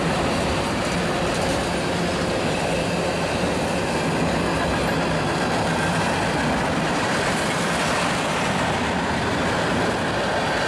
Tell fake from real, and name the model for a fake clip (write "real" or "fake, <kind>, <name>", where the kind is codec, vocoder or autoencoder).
real